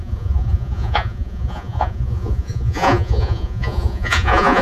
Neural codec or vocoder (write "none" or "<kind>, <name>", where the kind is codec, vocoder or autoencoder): vocoder, Vocos